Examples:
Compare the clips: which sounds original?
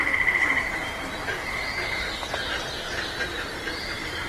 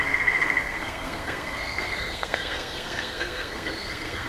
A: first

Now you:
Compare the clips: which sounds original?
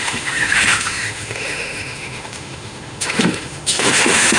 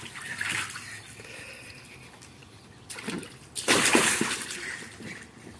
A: second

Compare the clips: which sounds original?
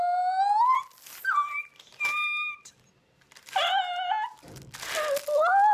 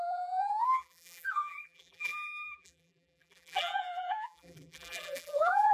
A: first